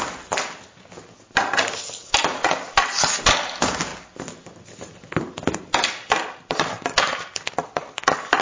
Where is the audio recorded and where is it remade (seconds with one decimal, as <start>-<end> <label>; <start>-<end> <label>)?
0.0-8.4 recorded